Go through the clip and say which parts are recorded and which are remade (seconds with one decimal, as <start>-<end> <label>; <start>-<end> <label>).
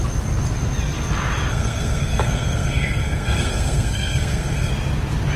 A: 0.0-1.5 recorded; 1.5-4.7 remade; 4.7-5.4 recorded